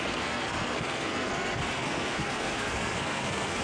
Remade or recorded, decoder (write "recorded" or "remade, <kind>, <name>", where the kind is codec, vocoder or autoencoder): remade, codec, SNAC